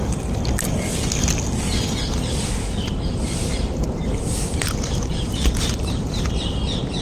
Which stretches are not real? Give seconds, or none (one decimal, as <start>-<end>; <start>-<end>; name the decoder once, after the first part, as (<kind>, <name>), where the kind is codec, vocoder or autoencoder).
2.6-6.2 (vocoder, BigVGAN v2)